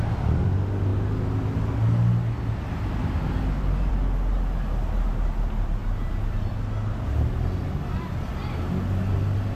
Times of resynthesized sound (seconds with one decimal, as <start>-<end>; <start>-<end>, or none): none